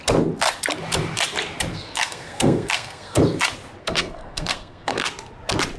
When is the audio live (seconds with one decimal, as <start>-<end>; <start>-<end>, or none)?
0.0-1.7; 3.2-3.8; 5.1-5.8